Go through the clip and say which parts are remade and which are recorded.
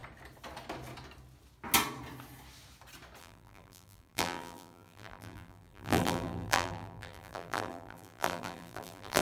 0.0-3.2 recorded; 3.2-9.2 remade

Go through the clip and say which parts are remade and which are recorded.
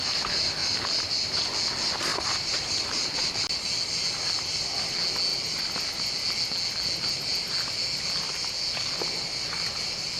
0.0-0.6 recorded; 0.6-1.4 remade; 1.4-2.1 recorded; 2.1-3.3 remade; 3.3-5.3 recorded; 5.3-5.8 remade; 5.8-10.2 recorded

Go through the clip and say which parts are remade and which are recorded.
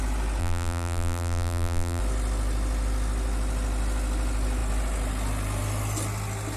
0.0-0.4 recorded; 0.4-2.0 remade; 2.0-6.6 recorded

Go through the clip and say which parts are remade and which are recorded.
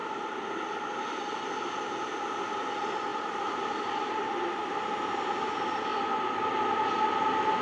0.0-1.5 remade; 1.5-3.1 recorded; 3.1-4.3 remade; 4.3-7.6 recorded